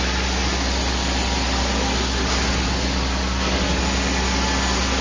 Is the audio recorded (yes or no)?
yes